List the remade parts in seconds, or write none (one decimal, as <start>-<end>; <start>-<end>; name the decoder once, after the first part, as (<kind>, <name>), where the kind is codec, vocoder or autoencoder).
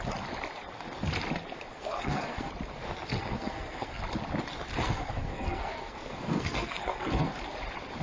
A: 1.7-2.5 (codec, SNAC); 3.2-4.0; 4.8-7.3